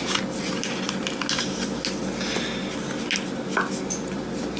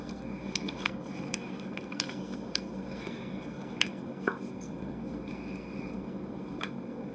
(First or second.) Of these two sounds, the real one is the first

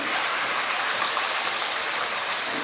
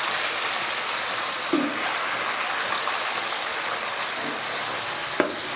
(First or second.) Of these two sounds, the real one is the second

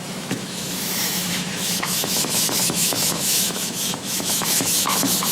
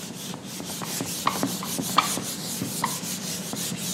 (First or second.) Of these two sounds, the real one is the second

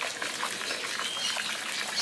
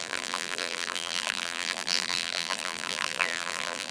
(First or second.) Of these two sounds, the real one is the first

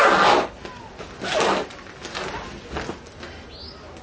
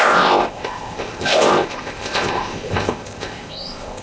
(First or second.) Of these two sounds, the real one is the first